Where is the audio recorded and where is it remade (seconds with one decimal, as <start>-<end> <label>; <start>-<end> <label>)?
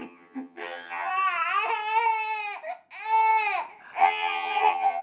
0.0-1.1 remade; 1.1-4.0 recorded; 4.0-5.0 remade